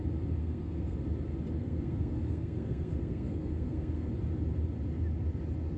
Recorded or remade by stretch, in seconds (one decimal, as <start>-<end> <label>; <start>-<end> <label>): 0.0-0.4 recorded; 0.4-1.0 remade; 1.0-1.6 recorded; 1.6-4.1 remade; 4.1-5.8 recorded

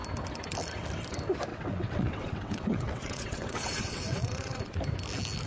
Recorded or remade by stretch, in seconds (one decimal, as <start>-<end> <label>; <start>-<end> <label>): 0.0-1.5 recorded; 1.5-4.8 remade; 4.8-5.5 recorded

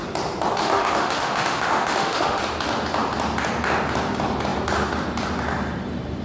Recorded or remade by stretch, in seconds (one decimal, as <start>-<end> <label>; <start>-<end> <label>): 0.0-0.6 recorded; 0.6-2.4 remade; 2.4-6.2 recorded

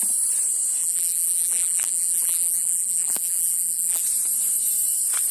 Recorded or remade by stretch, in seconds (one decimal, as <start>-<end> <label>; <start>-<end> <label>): 0.0-0.8 recorded; 0.8-4.0 remade; 4.0-5.3 recorded

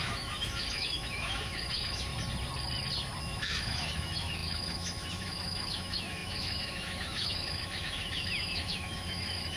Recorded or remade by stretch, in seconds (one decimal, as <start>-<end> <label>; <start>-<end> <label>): 0.0-2.1 remade; 2.1-3.2 recorded; 3.2-9.6 remade

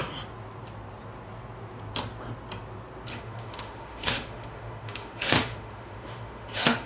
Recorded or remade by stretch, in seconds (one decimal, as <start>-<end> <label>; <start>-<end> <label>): 0.0-3.1 recorded; 3.1-6.9 remade

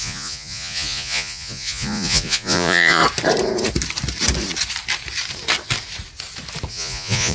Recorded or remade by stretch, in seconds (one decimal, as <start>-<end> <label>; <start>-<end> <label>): 0.0-3.0 remade; 3.0-6.7 recorded; 6.7-7.3 remade